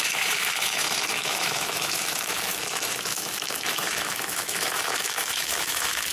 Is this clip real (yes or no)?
no